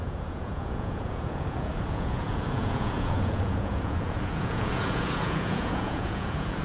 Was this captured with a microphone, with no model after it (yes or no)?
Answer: no